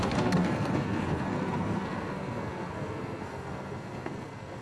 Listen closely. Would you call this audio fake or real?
fake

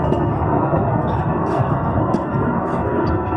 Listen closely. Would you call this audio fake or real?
fake